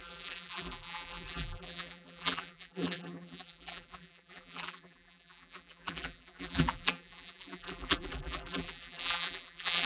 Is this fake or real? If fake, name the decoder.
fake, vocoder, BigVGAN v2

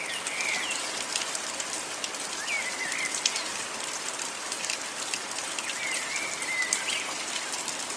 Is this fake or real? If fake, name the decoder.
real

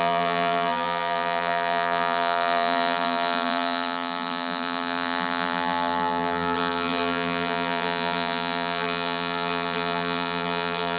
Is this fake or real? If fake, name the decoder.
fake, vocoder, BigVGAN v2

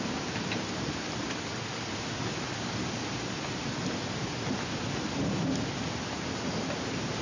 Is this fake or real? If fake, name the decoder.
real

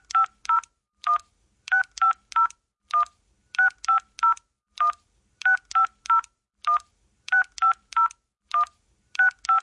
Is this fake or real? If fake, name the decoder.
fake, vocoder, BigVGAN v2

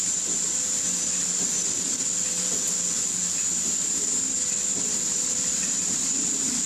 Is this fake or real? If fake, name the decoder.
real